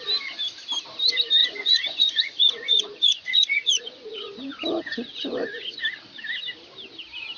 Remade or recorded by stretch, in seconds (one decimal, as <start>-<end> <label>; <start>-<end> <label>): 0.0-1.4 recorded; 1.4-5.8 remade; 5.8-7.4 recorded